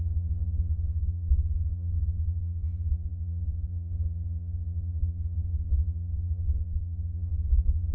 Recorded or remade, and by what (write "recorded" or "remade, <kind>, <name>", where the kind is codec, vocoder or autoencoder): remade, vocoder, Vocos